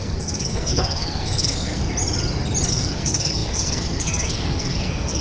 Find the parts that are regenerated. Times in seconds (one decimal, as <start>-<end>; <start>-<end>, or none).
0.0-1.8; 2.7-5.2